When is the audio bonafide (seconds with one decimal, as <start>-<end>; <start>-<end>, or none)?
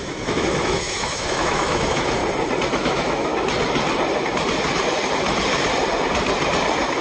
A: 2.2-2.8; 3.3-7.0